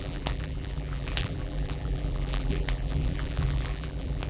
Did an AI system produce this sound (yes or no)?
yes